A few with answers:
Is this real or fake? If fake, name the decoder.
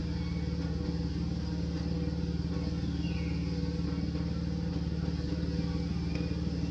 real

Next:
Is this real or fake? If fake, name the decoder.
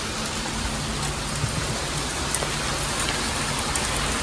real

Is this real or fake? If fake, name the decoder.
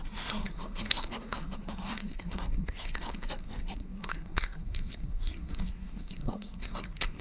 fake, codec, SNAC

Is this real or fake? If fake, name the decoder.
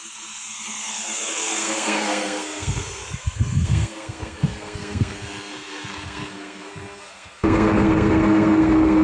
fake, codec, SNAC